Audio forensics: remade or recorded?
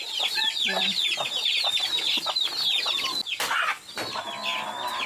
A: recorded